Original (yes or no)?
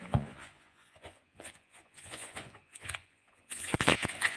no